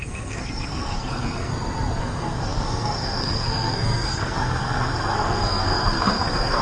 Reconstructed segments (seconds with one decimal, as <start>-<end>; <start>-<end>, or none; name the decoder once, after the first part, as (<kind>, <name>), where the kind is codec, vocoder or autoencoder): 0.0-1.5 (codec, SNAC); 2.0-6.6